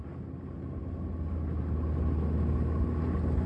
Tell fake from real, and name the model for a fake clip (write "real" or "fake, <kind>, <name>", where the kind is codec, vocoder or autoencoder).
real